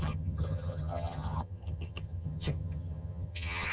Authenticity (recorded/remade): remade